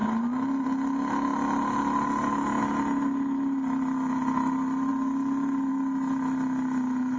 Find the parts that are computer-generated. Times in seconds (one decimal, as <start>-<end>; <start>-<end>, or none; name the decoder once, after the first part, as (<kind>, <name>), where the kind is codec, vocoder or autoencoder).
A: none